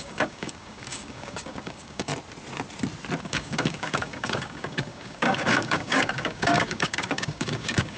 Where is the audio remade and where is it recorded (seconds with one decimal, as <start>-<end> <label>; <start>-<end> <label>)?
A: 0.0-2.1 remade; 2.1-3.2 recorded; 3.2-8.0 remade